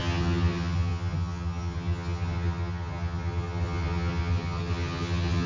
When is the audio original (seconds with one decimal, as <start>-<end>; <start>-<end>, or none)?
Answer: none

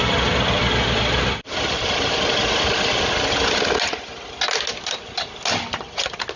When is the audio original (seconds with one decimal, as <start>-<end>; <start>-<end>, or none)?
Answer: 0.0-6.4

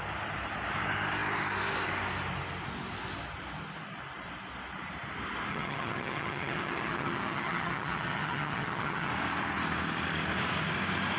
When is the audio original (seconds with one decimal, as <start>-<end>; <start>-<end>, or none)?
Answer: 0.0-5.5; 9.1-11.2

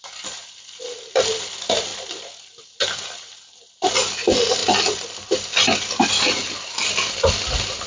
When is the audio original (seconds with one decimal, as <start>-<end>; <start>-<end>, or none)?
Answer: 0.0-7.9

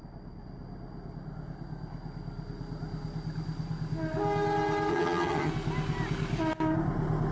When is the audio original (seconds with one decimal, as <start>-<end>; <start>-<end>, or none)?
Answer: 0.0-4.9; 5.5-7.3

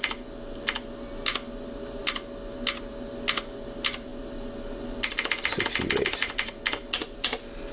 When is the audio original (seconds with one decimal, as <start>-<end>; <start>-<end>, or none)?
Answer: 0.0-7.7

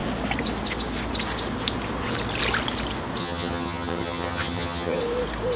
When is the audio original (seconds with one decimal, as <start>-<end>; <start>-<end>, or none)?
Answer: 0.0-3.2; 5.0-5.6